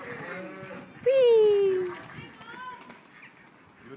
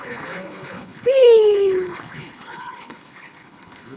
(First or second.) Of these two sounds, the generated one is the second